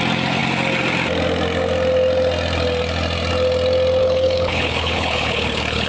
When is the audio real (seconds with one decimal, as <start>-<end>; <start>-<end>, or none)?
0.0-4.0